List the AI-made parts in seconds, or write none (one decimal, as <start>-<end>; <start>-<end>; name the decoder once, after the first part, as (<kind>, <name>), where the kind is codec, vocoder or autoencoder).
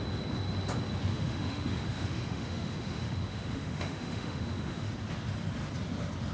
1.1-4.9 (autoencoder, DAC-VAE)